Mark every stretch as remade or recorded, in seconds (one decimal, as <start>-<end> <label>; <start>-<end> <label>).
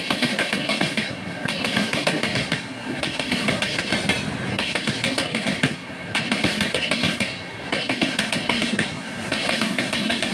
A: 0.0-3.9 remade; 3.9-4.5 recorded; 4.5-10.3 remade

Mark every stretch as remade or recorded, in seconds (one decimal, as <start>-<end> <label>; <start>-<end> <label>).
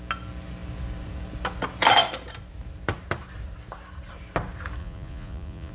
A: 0.0-4.8 recorded; 4.8-5.7 remade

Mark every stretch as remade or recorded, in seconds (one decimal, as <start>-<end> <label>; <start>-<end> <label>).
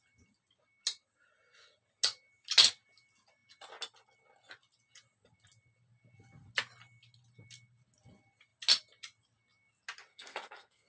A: 0.0-10.1 recorded; 10.1-10.9 remade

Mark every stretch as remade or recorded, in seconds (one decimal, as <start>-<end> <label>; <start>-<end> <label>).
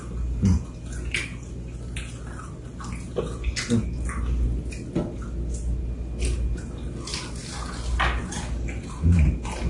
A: 0.0-9.7 recorded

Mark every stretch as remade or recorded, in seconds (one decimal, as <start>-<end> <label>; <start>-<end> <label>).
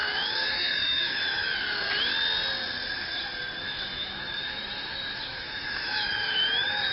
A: 0.0-1.5 remade; 1.5-3.6 recorded; 3.6-6.9 remade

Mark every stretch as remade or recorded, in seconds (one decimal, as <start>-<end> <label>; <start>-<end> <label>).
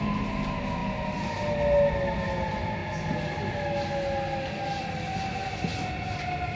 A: 0.0-6.6 recorded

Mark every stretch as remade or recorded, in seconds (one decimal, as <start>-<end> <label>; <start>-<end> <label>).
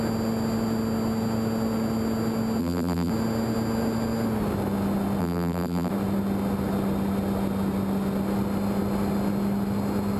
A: 0.0-2.6 recorded; 2.6-3.1 remade; 3.1-5.2 recorded; 5.2-5.9 remade; 5.9-10.2 recorded